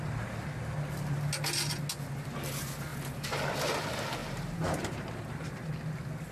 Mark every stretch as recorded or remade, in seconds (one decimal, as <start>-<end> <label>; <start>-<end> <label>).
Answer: 0.0-4.2 recorded; 4.2-5.7 remade; 5.7-6.3 recorded